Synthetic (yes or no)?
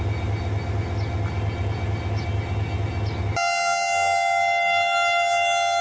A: no